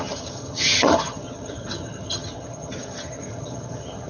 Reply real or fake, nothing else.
fake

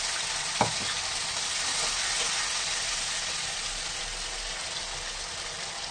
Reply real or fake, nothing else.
real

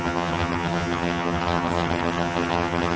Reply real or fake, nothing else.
fake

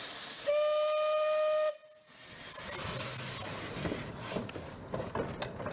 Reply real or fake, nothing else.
real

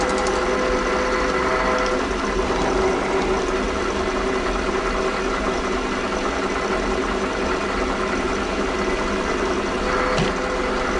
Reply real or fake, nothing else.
real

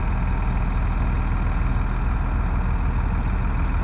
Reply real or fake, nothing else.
real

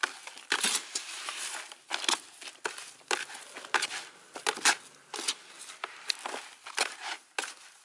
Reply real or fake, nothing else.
real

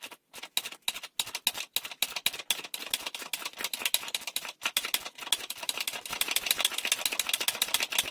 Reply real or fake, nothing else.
real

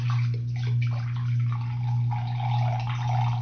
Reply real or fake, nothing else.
real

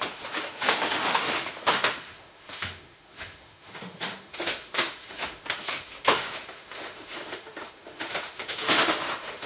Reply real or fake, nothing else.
fake